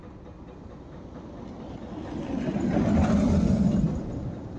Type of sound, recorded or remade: recorded